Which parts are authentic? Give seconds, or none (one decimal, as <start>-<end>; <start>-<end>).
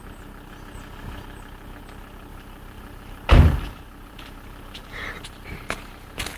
0.0-2.3